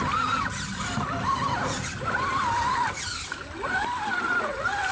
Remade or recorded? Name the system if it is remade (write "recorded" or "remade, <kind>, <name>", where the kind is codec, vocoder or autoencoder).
recorded